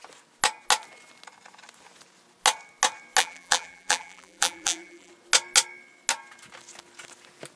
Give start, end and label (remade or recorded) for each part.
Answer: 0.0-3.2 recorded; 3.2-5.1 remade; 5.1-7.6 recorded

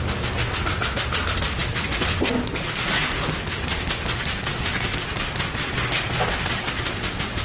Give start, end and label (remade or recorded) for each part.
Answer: 0.0-7.4 recorded

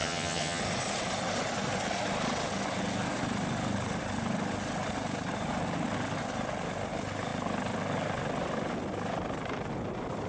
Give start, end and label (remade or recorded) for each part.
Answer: 0.0-0.6 remade; 0.6-10.3 recorded